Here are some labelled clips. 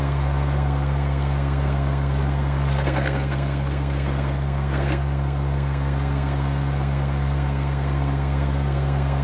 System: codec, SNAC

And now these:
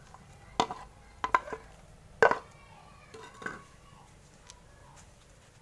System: none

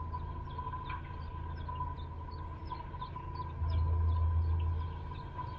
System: none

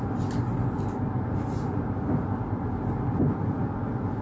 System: none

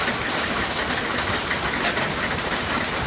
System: none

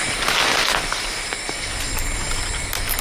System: none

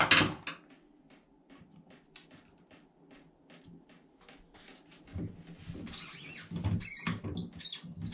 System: none